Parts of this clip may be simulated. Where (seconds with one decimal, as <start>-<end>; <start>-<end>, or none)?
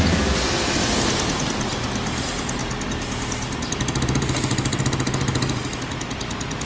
none